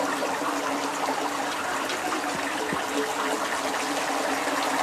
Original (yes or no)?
yes